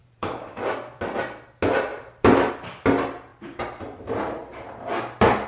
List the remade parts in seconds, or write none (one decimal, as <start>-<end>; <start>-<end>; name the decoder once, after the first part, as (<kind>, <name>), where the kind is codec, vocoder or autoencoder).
0.0-0.7 (vocoder, BigVGAN v2); 1.9-2.5; 3.3-5.0